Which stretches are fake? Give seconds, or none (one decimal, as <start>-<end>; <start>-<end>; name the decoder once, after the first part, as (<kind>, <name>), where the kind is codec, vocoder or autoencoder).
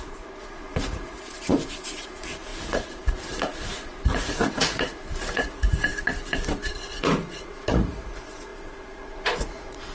0.0-5.9 (vocoder, Vocos); 6.7-9.9